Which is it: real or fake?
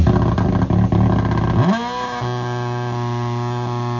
real